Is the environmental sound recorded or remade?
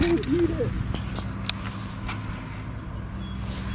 recorded